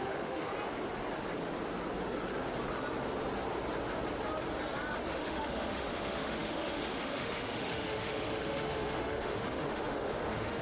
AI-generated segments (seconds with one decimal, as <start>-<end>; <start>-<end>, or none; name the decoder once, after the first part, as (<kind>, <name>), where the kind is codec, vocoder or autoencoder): 0.0-0.5 (autoencoder, DAC-VAE); 5.1-10.6

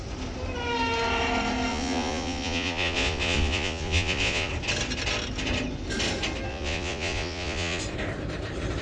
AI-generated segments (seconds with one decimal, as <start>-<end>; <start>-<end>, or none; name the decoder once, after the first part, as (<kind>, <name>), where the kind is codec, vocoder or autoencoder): 1.7-4.5 (vocoder, Vocos); 6.5-7.8

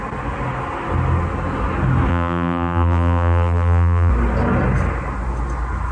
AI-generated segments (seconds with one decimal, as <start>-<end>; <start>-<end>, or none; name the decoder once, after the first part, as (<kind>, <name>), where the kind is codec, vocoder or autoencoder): 2.1-4.1 (vocoder, BigVGAN v2)

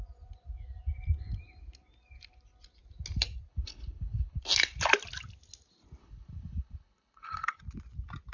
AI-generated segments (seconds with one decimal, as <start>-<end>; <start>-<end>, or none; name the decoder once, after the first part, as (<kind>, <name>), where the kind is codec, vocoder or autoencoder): 3.5-4.4 (codec, HILCodec); 6.0-7.6

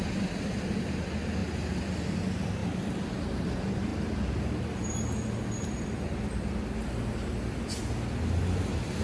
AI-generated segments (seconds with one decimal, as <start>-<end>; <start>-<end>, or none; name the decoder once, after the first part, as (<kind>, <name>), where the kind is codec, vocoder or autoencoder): none

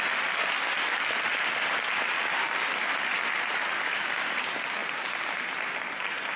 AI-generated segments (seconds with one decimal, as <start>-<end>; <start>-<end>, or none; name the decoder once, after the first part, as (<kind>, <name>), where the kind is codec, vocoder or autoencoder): none

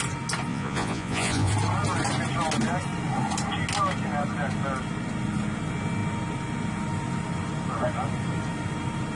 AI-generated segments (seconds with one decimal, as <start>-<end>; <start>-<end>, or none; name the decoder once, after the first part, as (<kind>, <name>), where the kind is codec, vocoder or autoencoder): 0.5-1.5 (vocoder, Vocos)